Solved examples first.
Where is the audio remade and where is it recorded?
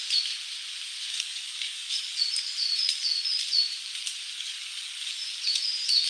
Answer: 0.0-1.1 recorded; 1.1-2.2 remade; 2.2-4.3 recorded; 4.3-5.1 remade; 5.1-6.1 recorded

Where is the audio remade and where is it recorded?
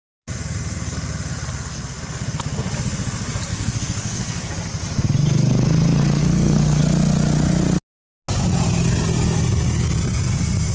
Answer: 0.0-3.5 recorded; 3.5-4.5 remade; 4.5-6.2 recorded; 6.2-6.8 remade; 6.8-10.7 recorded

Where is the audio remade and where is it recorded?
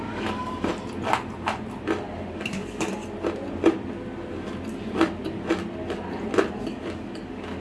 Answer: 0.0-0.7 remade; 0.7-2.4 recorded; 2.4-3.0 remade; 3.0-6.5 recorded; 6.5-7.6 remade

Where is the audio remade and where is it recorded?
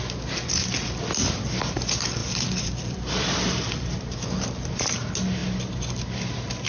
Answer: 0.0-2.2 recorded; 2.2-4.6 remade; 4.6-6.7 recorded